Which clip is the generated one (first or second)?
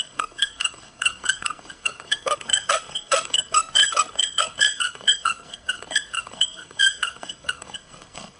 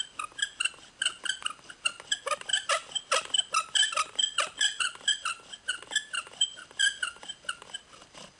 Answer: first